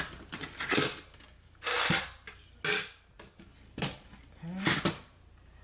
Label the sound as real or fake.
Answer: real